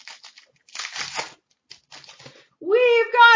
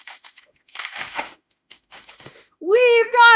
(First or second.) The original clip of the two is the first